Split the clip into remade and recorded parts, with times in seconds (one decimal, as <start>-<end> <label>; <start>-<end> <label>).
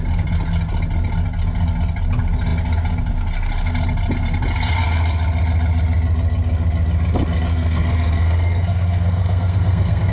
0.0-7.5 recorded; 7.5-10.1 remade